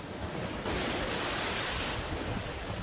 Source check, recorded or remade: recorded